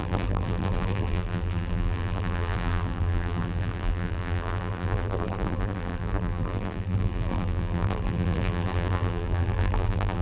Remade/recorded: remade